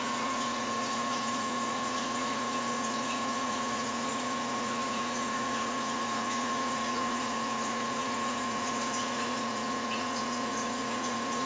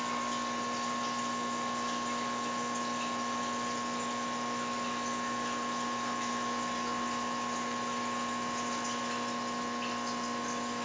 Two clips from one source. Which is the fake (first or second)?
first